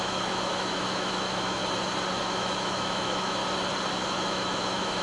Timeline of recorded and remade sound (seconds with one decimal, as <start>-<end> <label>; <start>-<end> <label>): 0.0-1.6 remade; 1.6-2.2 recorded; 2.2-3.4 remade; 3.4-3.9 recorded; 3.9-5.0 remade